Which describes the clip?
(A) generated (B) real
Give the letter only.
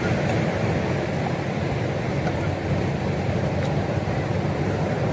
B